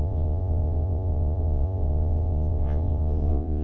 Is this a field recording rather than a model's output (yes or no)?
no